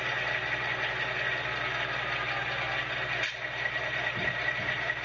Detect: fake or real real